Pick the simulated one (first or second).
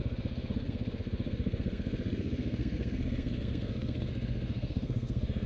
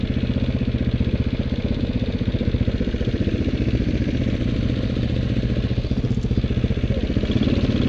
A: first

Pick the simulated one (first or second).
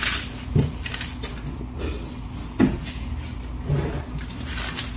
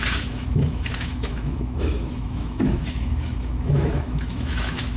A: second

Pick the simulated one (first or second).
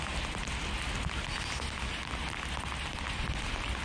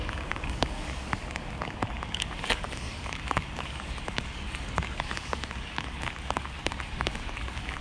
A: second